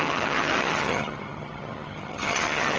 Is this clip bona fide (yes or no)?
no